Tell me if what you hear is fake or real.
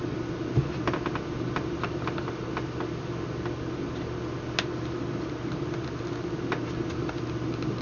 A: real